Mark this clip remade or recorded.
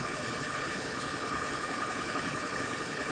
remade